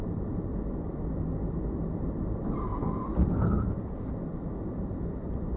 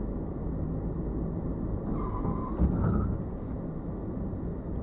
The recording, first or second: second